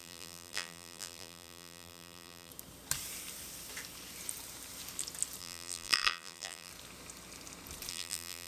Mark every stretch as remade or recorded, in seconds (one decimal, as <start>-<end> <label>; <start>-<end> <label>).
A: 0.0-2.5 remade; 2.5-5.4 recorded; 5.4-6.7 remade; 6.7-7.9 recorded; 7.9-8.5 remade